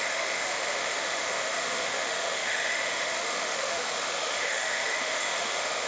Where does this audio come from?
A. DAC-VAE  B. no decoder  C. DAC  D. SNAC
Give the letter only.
A